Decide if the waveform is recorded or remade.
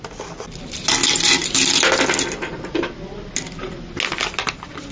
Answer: recorded